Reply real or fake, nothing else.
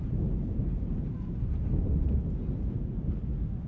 real